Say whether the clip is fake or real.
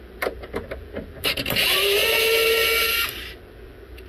real